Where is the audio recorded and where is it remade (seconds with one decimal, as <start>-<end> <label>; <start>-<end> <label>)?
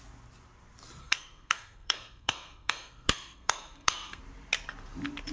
0.0-1.0 recorded; 1.0-4.2 remade; 4.2-5.3 recorded